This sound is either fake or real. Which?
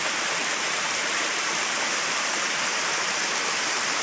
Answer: real